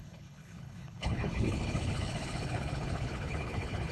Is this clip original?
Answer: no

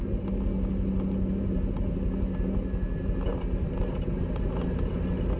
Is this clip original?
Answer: yes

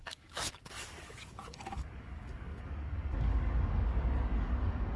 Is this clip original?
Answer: no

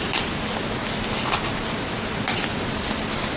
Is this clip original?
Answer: yes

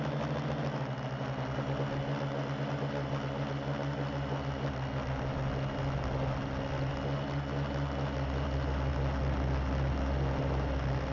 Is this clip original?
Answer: yes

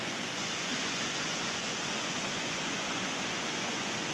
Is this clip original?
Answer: no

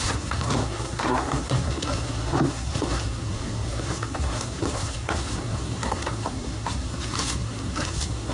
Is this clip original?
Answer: no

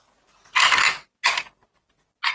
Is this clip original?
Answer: yes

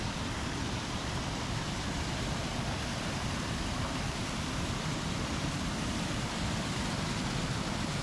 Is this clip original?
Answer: no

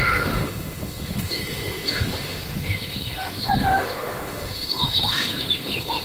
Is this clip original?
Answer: no